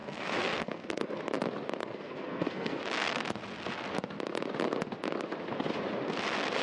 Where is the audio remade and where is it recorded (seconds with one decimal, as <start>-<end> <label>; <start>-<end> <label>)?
0.0-1.2 remade; 1.2-1.8 recorded; 1.8-2.8 remade; 2.8-6.6 recorded